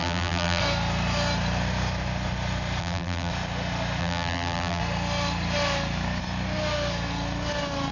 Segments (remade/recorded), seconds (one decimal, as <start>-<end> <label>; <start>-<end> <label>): 0.0-0.6 remade; 0.6-2.8 recorded; 2.8-3.3 remade; 3.3-4.0 recorded; 4.0-4.8 remade; 4.8-7.9 recorded